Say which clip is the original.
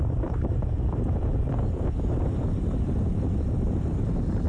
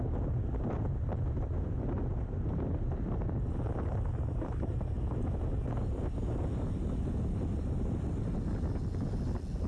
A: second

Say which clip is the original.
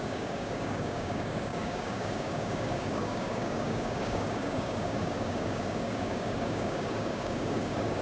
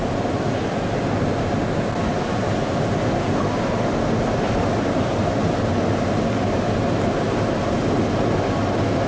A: second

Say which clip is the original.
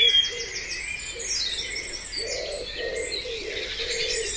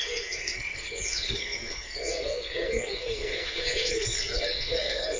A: first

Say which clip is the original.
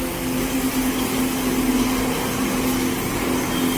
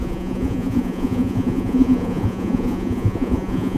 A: first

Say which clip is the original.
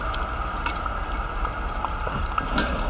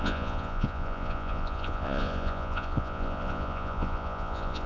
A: first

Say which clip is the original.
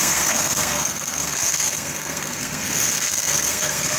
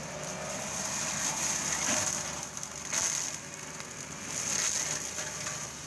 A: second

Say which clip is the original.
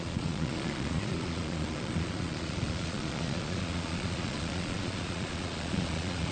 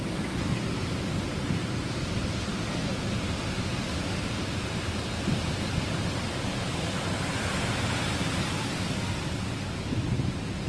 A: second